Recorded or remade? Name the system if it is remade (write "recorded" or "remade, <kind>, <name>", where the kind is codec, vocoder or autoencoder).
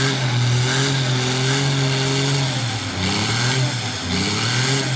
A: recorded